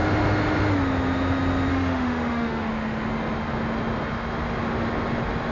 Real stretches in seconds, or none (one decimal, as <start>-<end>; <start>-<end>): 0.0-1.7; 2.7-5.5